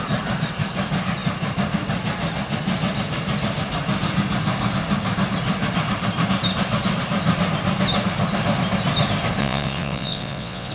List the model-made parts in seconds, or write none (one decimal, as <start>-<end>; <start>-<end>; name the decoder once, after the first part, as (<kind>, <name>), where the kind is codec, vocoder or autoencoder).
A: 9.4-10.7 (vocoder, WaveNeXt)